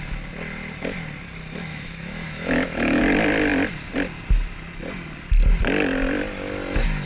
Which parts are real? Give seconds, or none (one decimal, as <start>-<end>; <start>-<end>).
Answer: 0.0-1.7; 3.0-7.1